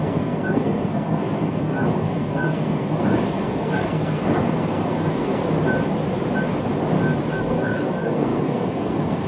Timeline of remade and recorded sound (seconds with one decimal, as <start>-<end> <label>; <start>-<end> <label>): 0.0-5.4 remade; 5.4-7.3 recorded; 7.3-9.3 remade